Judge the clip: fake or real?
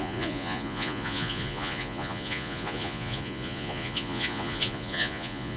fake